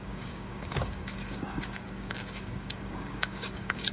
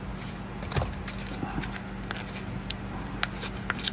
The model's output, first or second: first